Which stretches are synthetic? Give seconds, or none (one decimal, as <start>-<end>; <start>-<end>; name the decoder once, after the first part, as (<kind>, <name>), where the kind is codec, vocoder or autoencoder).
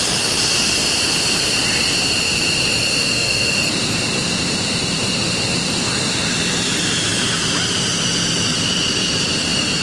3.0-3.6 (autoencoder, DAC-VAE)